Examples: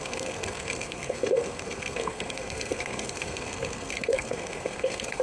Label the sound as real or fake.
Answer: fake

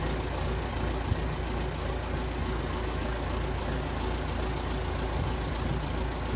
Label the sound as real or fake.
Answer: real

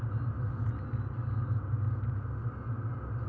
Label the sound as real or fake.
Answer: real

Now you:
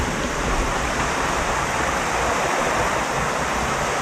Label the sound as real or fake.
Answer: real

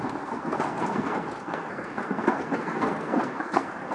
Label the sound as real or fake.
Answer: fake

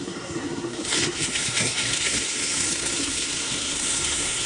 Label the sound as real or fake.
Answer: fake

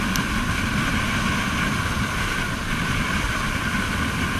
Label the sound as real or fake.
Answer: real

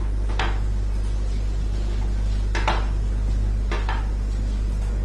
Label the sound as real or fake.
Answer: real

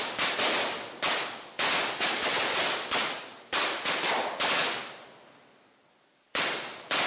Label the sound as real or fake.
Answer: real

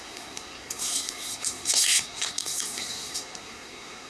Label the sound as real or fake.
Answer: fake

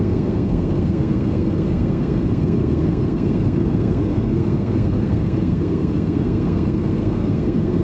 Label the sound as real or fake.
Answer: fake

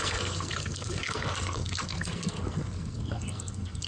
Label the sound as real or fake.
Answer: fake